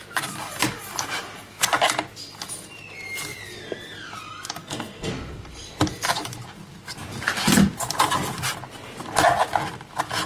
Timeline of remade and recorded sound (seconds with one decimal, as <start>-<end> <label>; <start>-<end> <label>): 0.0-4.6 recorded; 4.6-5.1 remade; 5.1-10.3 recorded